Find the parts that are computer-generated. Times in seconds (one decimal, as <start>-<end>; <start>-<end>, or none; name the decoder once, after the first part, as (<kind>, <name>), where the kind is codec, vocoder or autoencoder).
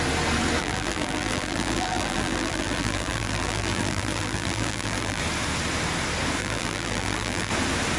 0.6-5.2 (vocoder, BigVGAN v2); 6.4-7.5